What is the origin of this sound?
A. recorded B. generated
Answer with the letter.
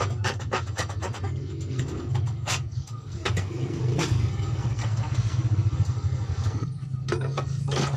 B